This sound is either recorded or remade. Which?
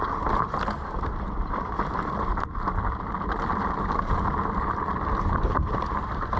remade